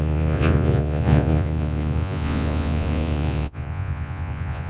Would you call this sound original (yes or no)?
no